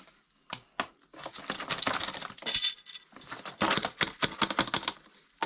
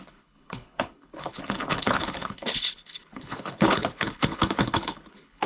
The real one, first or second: first